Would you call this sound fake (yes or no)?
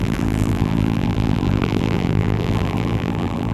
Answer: yes